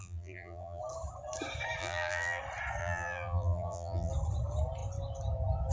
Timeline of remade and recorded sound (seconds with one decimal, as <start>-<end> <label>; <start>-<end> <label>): 0.0-0.8 remade; 0.8-1.8 recorded; 1.8-2.4 remade; 2.4-2.8 recorded; 2.8-4.1 remade; 4.1-5.7 recorded